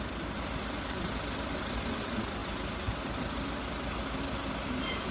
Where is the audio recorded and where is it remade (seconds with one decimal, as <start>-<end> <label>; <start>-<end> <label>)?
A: 0.0-5.1 recorded